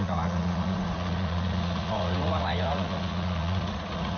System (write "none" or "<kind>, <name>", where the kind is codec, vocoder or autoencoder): vocoder, Vocos